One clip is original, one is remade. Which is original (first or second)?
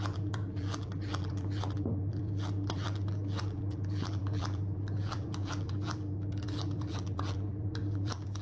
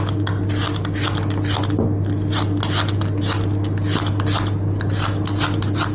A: second